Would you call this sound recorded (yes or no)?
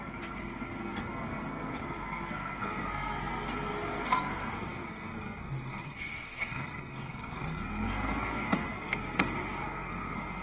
no